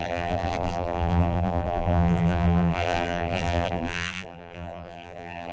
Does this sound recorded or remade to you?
remade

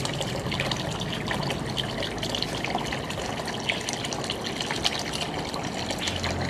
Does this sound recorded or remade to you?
recorded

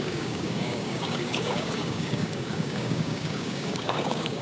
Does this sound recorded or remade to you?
remade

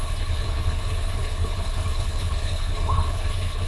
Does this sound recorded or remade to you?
remade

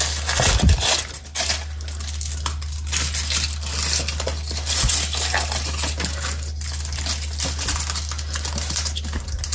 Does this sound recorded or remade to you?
recorded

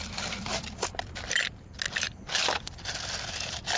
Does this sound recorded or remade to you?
recorded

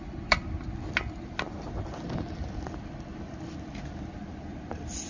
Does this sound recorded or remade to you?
recorded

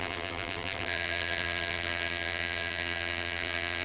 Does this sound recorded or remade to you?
remade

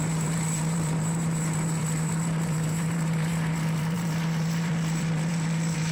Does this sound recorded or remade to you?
remade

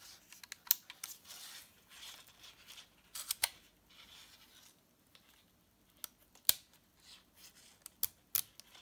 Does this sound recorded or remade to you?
recorded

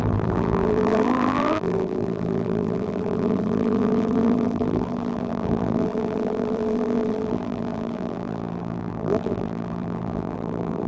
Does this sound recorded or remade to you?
remade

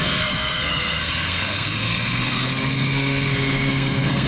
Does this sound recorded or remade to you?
remade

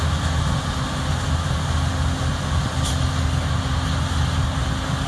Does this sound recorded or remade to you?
recorded